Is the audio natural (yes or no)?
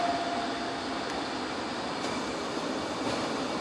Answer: yes